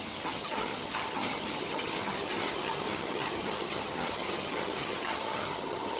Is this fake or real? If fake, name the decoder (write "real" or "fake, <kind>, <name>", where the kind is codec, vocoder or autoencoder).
fake, vocoder, HiFi-GAN